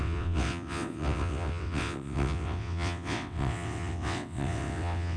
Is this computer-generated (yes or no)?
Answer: yes